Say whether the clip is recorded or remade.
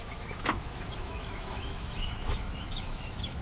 remade